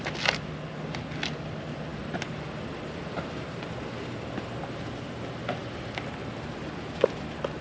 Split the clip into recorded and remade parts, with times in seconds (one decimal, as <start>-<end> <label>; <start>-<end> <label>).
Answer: 0.0-7.6 recorded